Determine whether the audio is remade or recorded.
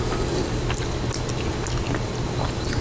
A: recorded